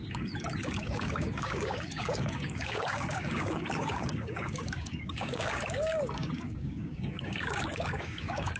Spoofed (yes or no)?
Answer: yes